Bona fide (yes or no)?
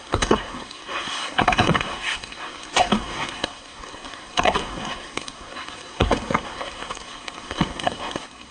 no